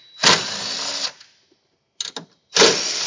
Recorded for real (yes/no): yes